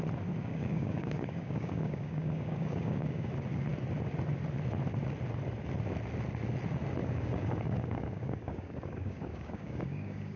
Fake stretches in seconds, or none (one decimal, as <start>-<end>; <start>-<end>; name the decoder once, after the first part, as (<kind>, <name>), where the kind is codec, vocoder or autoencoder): 0.4-3.3 (codec, DAC); 7.0-10.4